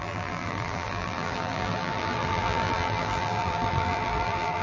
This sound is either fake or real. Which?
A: fake